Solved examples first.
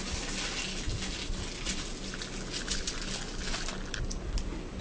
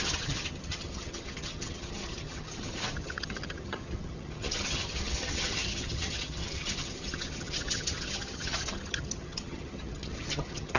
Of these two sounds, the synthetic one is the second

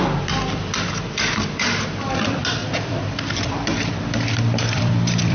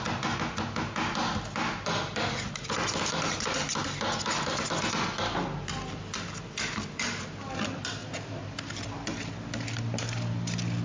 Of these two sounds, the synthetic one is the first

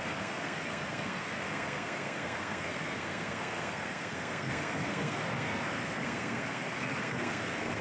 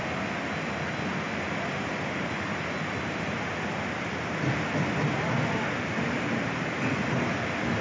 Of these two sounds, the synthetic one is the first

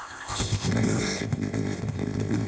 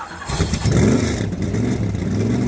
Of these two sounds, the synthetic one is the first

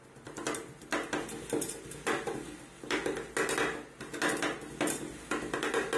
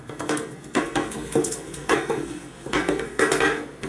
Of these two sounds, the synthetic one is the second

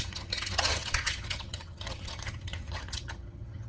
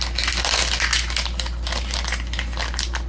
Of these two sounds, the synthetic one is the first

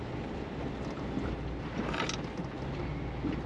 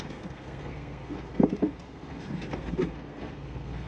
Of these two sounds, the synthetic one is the second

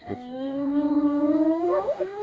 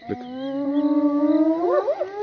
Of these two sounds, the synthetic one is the first